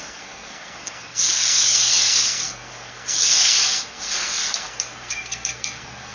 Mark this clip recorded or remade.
remade